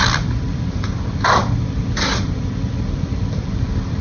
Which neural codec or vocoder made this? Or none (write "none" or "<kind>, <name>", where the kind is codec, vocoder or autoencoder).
none